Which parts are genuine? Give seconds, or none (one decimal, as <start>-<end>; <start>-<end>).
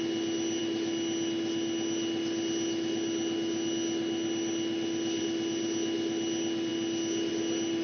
0.0-7.8